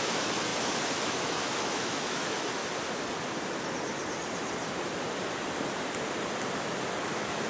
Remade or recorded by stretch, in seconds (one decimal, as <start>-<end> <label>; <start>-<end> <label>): 0.0-2.6 remade; 2.6-7.0 recorded; 7.0-7.5 remade